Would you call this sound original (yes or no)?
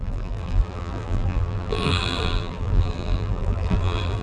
no